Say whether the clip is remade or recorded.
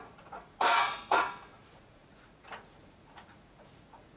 remade